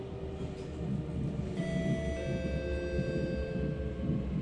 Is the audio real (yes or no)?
yes